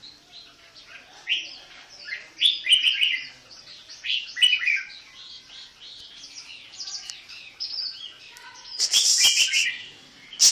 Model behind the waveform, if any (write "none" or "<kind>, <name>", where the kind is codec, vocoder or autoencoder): none